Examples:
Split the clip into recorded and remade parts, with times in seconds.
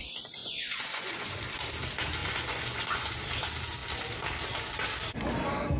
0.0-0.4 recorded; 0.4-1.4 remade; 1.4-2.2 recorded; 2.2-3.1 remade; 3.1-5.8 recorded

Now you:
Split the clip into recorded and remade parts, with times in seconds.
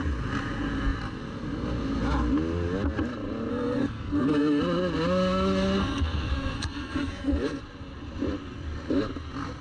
0.0-3.5 recorded; 3.5-4.6 remade; 4.6-5.8 recorded; 5.8-7.6 remade; 7.6-9.6 recorded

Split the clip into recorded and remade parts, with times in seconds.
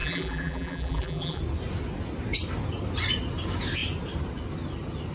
0.0-1.4 remade; 1.4-5.1 recorded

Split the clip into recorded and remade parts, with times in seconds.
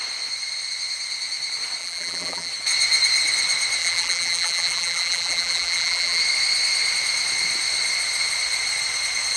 0.0-1.8 recorded; 1.8-2.5 remade; 2.5-3.8 recorded; 3.8-6.2 remade; 6.2-9.4 recorded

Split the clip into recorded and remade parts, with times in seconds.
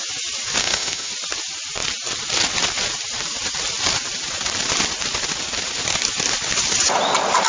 0.0-0.6 recorded; 0.6-1.1 remade; 1.1-7.5 recorded